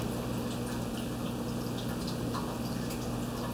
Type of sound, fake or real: real